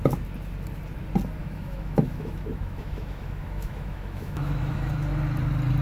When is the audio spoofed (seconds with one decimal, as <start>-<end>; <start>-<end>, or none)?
1.4-4.9

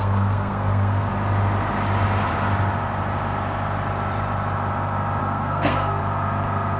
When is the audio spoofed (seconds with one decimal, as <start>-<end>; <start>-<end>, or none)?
0.0-1.1; 5.2-6.0

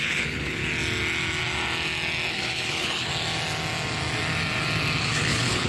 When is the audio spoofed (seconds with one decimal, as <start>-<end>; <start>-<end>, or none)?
0.0-0.6; 2.3-3.1; 5.0-5.7

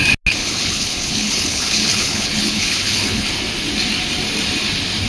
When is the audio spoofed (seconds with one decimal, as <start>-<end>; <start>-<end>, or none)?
0.4-3.3

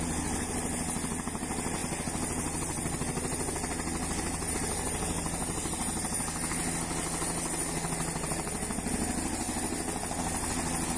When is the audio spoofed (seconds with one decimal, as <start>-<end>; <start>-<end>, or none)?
none